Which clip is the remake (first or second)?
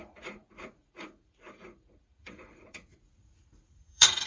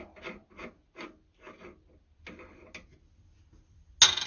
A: first